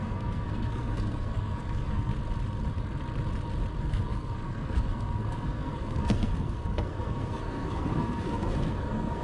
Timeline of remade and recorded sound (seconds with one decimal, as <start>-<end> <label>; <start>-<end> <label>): 0.0-2.1 remade; 2.1-3.8 recorded; 3.8-9.2 remade